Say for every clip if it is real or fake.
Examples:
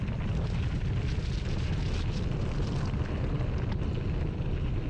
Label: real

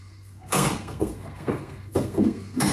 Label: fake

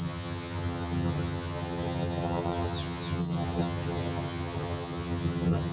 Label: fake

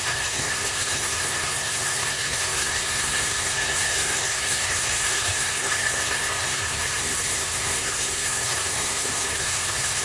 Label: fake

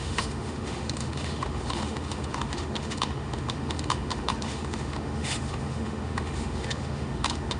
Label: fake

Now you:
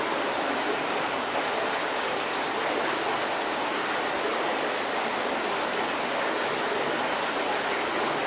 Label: real